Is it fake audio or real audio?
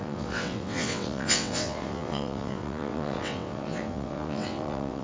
fake